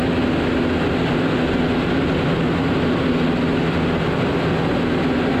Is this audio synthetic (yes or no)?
no